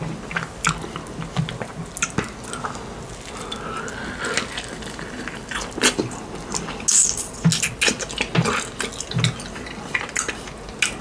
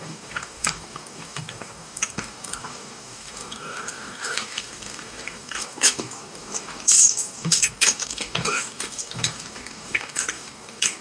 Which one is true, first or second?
first